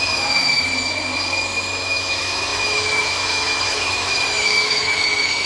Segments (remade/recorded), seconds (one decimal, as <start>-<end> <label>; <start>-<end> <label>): 0.0-0.7 remade; 0.7-1.7 recorded; 1.7-5.5 remade